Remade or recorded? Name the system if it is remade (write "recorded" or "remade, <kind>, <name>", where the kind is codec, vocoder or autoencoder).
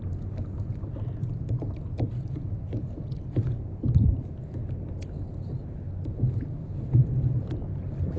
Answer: recorded